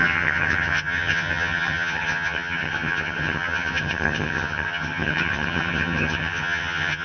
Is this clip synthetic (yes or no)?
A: yes